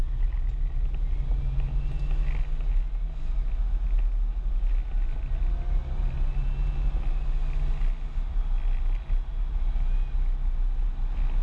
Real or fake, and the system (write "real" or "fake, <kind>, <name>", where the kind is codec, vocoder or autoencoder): real